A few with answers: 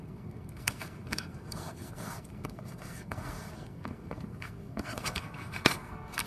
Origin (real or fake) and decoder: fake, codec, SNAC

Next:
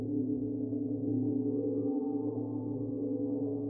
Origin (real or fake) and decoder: fake, codec, SNAC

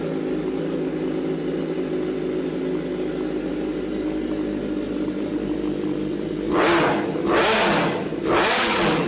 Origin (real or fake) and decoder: real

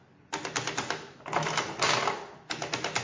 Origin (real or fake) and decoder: real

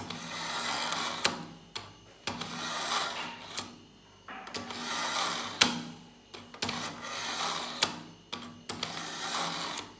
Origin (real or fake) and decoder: real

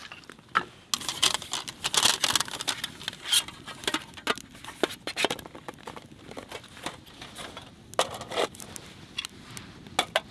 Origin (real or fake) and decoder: real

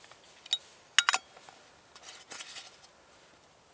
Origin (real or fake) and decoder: real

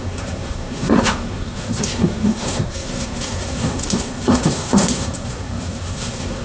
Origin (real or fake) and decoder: fake, codec, SNAC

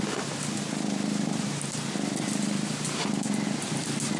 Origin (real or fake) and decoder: real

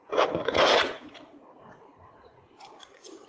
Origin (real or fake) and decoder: fake, vocoder, Vocos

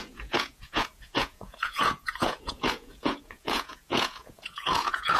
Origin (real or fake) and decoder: fake, vocoder, Vocos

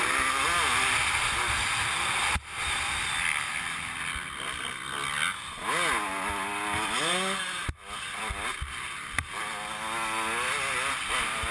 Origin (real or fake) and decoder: real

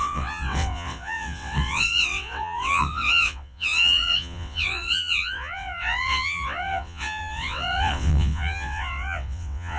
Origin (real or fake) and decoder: fake, vocoder, WaveNeXt